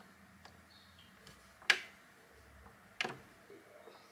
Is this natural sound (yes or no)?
yes